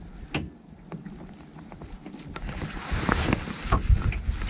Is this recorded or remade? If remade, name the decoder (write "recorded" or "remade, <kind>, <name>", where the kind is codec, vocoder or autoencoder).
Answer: recorded